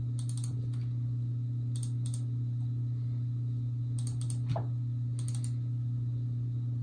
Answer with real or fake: real